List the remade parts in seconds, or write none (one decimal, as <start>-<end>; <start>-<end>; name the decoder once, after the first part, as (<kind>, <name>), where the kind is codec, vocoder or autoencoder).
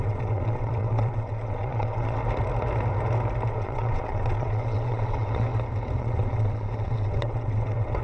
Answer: 0.0-2.2 (vocoder, WaveNeXt); 3.5-5.5; 6.0-8.0